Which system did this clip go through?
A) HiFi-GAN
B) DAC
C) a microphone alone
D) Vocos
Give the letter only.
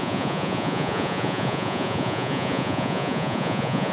D